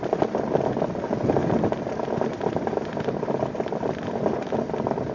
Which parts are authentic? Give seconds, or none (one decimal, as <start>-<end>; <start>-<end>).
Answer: 0.0-5.1